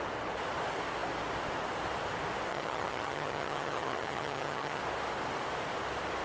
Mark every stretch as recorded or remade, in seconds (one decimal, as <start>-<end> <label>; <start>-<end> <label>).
0.0-2.5 recorded; 2.5-4.8 remade; 4.8-6.2 recorded